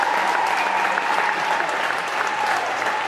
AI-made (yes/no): no